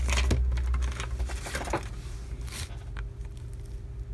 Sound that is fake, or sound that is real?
real